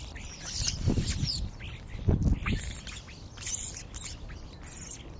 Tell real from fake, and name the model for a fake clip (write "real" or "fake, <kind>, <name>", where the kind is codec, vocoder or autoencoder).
real